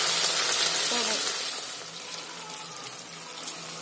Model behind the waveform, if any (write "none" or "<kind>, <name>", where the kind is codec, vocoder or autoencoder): none